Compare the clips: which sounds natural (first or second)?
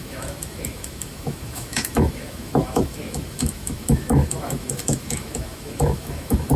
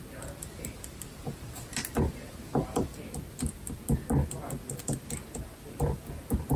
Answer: second